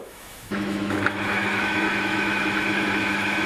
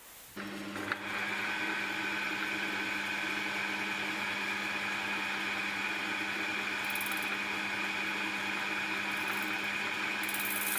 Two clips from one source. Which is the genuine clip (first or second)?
second